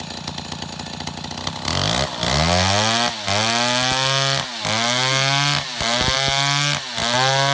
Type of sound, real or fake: real